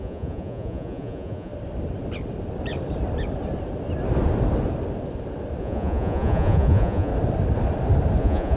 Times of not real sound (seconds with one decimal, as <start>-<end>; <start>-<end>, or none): 0.0-1.5; 5.6-7.1; 8.2-8.6

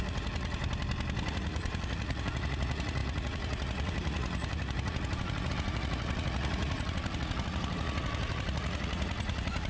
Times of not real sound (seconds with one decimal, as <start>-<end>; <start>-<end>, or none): 0.0-0.6; 1.3-9.7

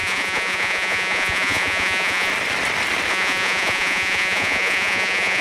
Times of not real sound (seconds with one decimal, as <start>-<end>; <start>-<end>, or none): 0.0-2.3; 3.1-5.4